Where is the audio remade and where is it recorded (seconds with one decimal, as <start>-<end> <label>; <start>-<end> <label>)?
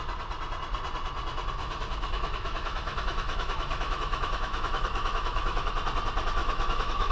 0.0-1.6 recorded; 1.6-5.7 remade; 5.7-6.4 recorded; 6.4-7.1 remade